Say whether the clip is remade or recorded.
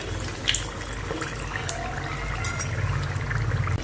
recorded